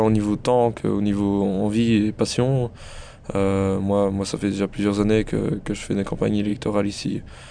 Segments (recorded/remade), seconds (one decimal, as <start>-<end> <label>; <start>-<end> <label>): 0.0-7.5 recorded